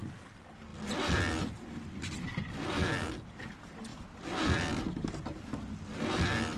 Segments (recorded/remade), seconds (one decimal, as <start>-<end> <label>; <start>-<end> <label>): 0.0-6.6 recorded